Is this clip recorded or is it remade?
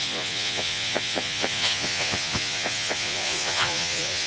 remade